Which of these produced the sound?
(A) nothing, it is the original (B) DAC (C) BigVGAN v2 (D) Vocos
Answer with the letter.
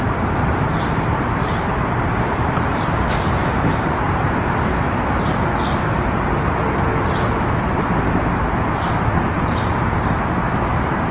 C